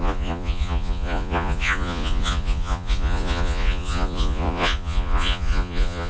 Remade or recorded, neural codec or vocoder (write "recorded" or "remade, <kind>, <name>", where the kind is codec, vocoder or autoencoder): remade, vocoder, Vocos